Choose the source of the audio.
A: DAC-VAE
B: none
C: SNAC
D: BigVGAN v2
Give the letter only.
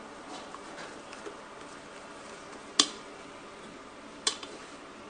B